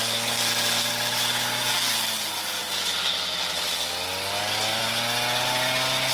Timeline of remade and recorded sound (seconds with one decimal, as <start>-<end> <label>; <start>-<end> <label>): 0.0-6.1 recorded